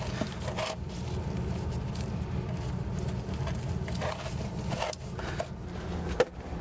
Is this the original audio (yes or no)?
yes